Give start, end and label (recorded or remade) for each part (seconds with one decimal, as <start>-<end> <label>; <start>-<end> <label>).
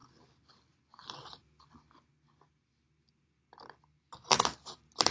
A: 0.0-5.1 recorded